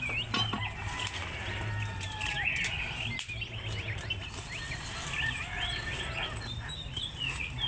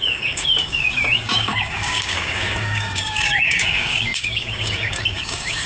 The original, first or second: first